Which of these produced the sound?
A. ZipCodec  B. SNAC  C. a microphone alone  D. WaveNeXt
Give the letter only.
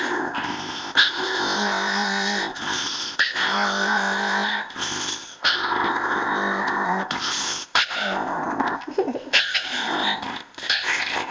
A